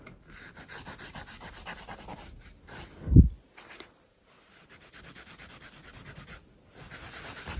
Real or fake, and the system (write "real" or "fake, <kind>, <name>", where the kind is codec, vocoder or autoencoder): real